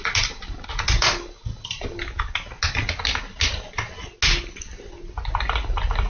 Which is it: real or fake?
real